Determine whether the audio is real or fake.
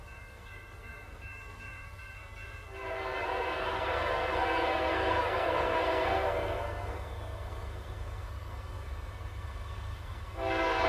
fake